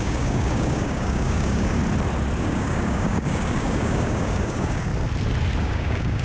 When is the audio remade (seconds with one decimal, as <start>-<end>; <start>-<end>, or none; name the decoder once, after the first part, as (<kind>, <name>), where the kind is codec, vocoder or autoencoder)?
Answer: 0.0-1.8 (codec, DAC); 2.4-4.9; 5.6-6.2